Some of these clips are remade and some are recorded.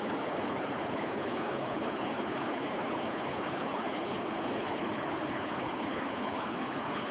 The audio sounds remade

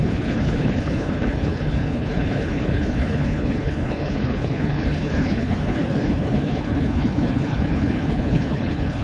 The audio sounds remade